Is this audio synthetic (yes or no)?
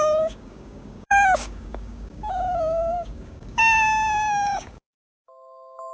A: yes